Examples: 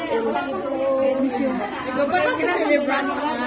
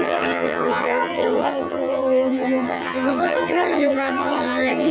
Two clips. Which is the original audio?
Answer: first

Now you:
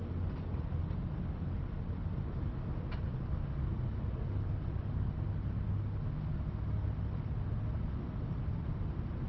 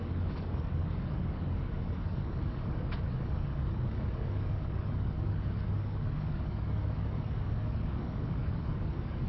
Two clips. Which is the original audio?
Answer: first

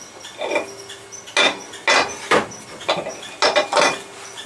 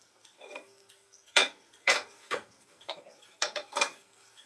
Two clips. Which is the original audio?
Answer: first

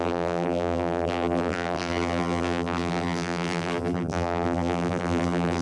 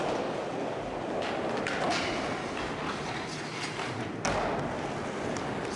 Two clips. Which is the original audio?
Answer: second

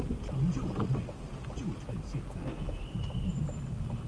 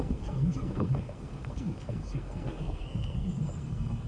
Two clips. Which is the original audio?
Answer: first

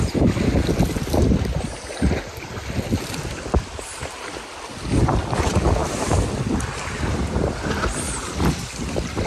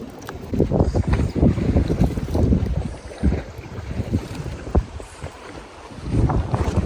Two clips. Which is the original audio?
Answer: first